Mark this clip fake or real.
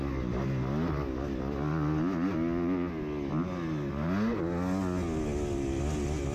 real